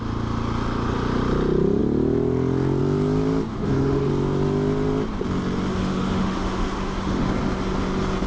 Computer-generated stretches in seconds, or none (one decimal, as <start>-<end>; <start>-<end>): 3.5-4.1; 5.7-7.3